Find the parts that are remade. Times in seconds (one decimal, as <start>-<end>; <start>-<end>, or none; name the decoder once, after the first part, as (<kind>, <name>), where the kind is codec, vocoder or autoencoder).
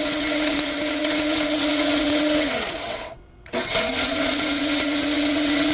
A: 0.0-5.7 (vocoder, WaveNeXt)